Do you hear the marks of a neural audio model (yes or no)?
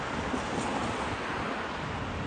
no